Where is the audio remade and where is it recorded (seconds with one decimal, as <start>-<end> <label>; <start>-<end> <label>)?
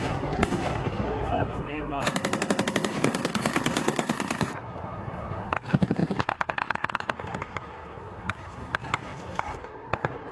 0.0-10.3 remade